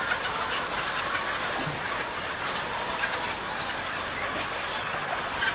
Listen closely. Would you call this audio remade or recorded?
recorded